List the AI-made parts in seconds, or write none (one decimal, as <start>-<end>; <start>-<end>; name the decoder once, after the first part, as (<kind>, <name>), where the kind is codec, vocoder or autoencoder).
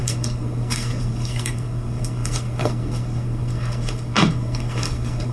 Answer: 0.0-5.3 (codec, SNAC)